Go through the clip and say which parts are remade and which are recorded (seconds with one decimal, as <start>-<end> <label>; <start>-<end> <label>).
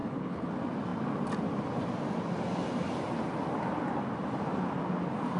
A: 0.0-0.5 remade; 0.5-5.4 recorded